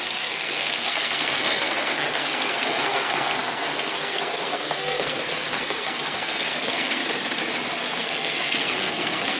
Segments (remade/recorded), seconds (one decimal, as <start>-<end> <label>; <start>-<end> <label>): 0.0-7.0 remade; 7.0-8.0 recorded; 8.0-9.4 remade